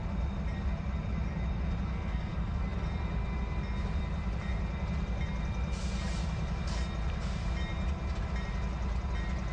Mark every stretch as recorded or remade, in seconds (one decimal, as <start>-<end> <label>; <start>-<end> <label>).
0.0-1.9 recorded; 1.9-2.6 remade; 2.6-9.5 recorded